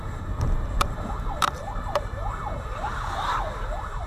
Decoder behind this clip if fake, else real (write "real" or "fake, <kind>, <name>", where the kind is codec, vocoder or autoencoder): fake, vocoder, BigVGAN v2